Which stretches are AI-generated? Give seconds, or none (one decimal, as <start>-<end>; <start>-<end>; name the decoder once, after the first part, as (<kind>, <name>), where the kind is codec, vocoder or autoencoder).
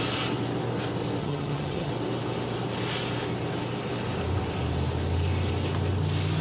1.2-1.9 (vocoder, HiFi-GAN)